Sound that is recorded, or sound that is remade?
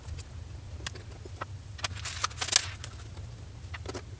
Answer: recorded